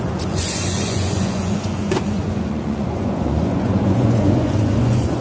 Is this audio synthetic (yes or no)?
yes